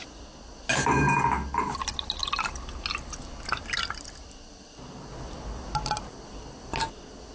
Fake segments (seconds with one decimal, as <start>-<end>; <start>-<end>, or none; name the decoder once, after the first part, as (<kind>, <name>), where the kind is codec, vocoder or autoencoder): none